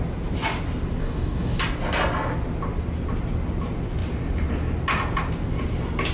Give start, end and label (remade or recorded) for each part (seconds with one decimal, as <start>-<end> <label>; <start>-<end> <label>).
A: 0.0-1.0 recorded; 1.0-1.6 remade; 1.6-6.1 recorded